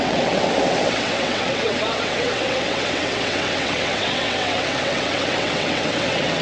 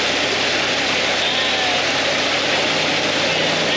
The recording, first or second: second